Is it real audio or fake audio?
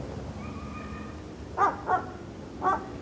real